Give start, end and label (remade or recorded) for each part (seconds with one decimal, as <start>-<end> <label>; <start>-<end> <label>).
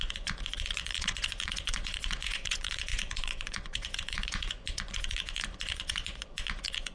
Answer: 0.0-6.9 remade